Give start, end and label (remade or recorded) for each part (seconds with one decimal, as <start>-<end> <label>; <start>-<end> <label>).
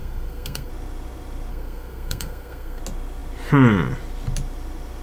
0.0-0.7 remade; 0.7-1.5 recorded; 1.5-2.8 remade; 2.8-5.0 recorded